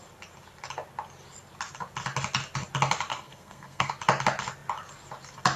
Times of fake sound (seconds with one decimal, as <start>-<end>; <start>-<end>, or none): 3.1-3.9